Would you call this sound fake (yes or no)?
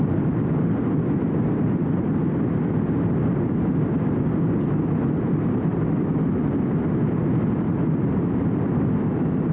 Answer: no